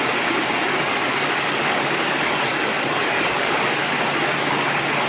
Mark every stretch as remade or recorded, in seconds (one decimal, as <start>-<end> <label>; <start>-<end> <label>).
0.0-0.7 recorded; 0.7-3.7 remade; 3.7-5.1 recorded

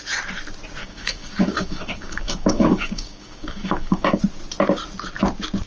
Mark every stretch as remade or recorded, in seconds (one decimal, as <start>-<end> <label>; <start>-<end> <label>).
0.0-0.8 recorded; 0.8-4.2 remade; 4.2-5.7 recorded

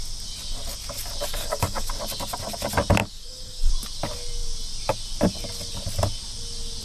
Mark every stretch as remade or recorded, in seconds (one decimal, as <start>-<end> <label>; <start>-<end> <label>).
0.0-1.3 recorded; 1.3-1.9 remade; 1.9-3.0 recorded; 3.0-3.7 remade; 3.7-6.8 recorded